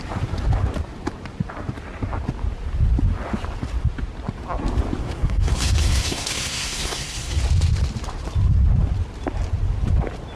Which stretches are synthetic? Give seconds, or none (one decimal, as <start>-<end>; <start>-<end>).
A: 5.0-7.4